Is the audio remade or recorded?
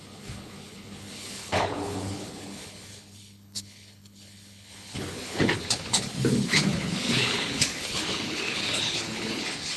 remade